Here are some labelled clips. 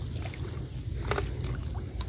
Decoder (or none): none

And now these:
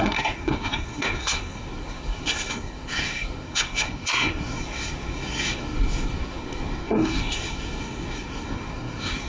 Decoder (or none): codec, SNAC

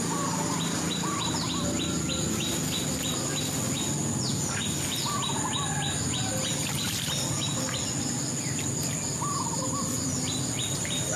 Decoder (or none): none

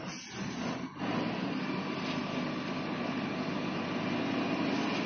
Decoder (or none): none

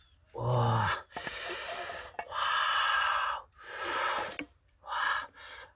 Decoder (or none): none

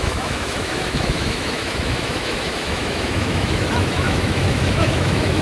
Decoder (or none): autoencoder, DAC-VAE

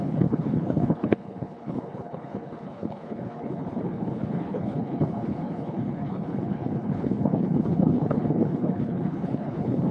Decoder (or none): codec, HILCodec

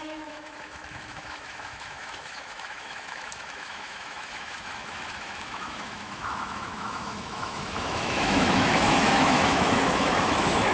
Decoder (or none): autoencoder, DAC-VAE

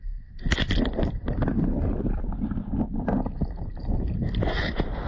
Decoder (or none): none